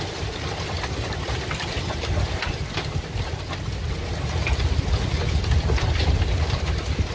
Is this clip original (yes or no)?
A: yes